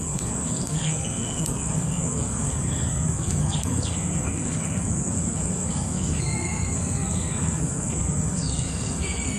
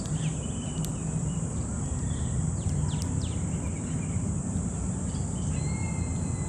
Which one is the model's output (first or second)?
first